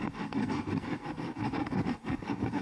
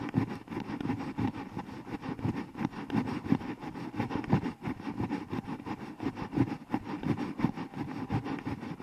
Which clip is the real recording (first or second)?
second